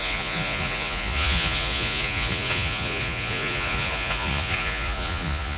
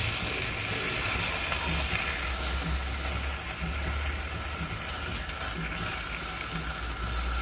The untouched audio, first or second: second